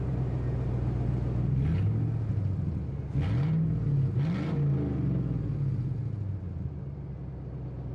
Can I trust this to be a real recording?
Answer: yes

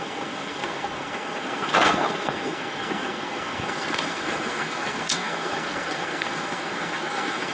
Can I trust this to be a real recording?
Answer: no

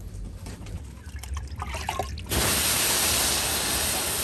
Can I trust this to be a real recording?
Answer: yes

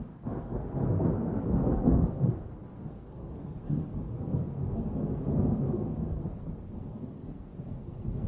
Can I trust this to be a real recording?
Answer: no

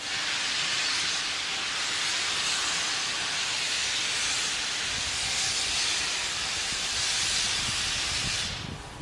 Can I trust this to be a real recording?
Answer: yes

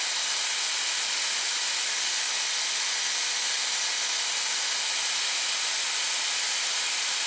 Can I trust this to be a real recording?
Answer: yes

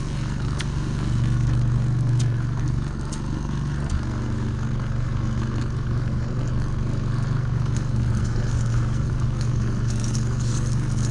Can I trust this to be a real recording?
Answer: no